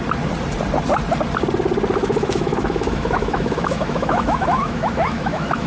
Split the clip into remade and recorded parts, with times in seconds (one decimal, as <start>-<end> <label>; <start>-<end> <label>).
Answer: 0.0-2.0 recorded; 2.0-5.7 remade